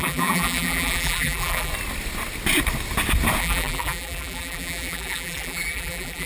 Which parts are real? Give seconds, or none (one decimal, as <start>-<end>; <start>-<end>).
1.7-3.4